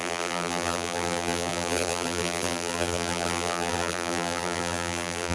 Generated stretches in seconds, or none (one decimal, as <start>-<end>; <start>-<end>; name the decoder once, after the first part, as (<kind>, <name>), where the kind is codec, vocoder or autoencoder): 0.0-5.3 (vocoder, BigVGAN v2)